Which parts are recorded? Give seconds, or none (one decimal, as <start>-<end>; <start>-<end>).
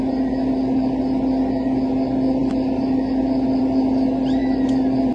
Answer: 0.0-5.1